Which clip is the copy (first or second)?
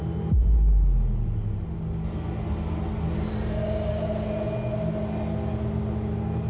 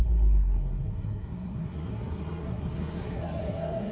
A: second